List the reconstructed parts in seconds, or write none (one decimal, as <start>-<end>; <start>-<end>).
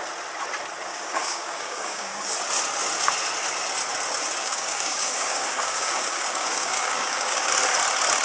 0.9-2.3; 4.4-7.5